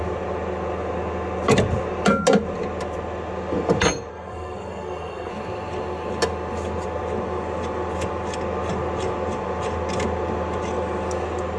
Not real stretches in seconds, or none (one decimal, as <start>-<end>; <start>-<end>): 4.1-5.3